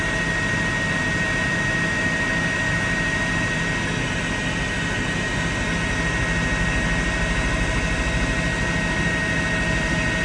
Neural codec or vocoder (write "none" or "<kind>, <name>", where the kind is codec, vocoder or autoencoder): none